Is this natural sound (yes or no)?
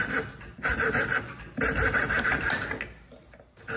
yes